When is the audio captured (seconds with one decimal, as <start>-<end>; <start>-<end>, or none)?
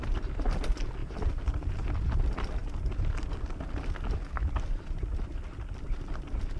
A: 0.0-1.0; 1.9-6.6